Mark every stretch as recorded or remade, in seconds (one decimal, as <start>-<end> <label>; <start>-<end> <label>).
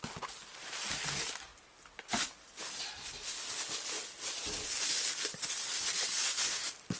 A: 0.0-7.0 recorded